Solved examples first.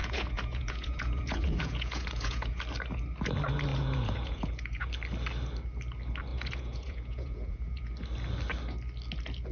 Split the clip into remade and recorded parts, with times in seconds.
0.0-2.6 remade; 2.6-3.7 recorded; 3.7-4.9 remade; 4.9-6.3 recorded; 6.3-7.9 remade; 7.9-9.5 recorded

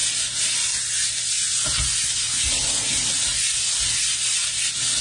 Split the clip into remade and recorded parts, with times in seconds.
0.0-5.0 recorded

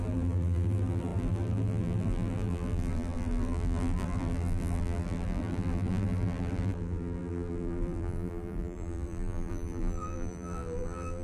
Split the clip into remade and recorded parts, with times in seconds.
0.0-11.2 remade

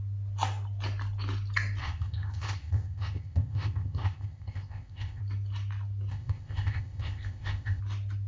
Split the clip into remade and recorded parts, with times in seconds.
0.0-1.8 recorded; 1.8-5.2 remade; 5.2-6.1 recorded; 6.1-7.8 remade; 7.8-8.3 recorded

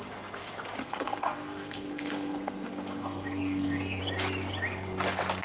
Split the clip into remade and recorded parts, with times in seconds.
0.0-0.8 recorded; 0.8-4.0 remade; 4.0-5.4 recorded

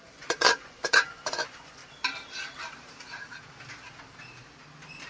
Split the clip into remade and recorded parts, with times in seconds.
0.0-1.8 remade; 1.8-5.1 recorded

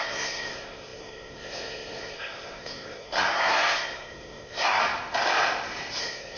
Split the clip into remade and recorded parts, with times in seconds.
0.0-4.8 remade; 4.8-6.0 recorded; 6.0-6.4 remade